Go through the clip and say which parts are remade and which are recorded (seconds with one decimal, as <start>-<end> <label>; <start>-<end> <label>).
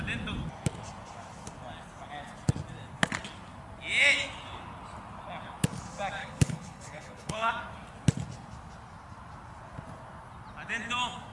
0.0-6.2 recorded; 6.2-7.5 remade; 7.5-11.3 recorded